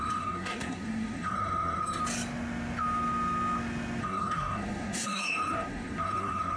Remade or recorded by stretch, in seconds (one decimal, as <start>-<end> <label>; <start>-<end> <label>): 0.0-2.0 remade; 2.0-4.0 recorded; 4.0-6.6 remade